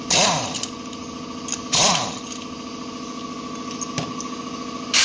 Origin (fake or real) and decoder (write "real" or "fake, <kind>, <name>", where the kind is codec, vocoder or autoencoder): real